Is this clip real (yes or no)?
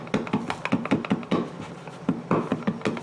yes